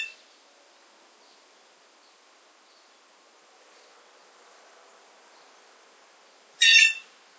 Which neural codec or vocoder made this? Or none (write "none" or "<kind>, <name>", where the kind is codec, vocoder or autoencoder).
none